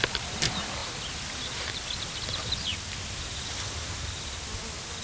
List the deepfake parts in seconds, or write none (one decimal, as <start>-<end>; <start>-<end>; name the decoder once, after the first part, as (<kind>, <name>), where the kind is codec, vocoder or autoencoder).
none